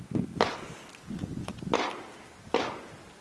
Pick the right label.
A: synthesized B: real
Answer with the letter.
B